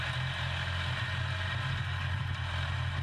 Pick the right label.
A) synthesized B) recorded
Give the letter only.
B